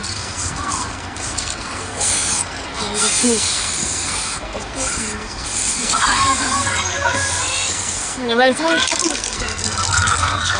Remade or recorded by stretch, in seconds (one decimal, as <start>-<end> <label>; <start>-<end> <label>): 0.0-10.6 remade